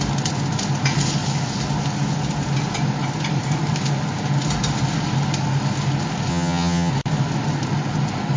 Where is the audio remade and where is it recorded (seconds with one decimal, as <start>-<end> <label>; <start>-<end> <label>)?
0.0-6.3 recorded; 6.3-6.9 remade; 6.9-8.4 recorded